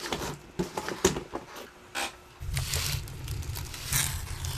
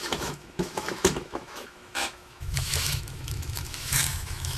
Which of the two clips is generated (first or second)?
second